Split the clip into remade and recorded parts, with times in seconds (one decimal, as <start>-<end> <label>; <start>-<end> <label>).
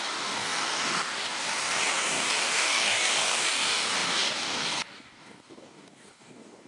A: 0.0-6.7 remade